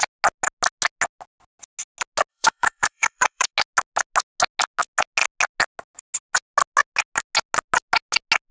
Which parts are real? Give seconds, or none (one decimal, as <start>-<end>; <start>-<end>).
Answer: 0.0-2.3; 3.5-8.5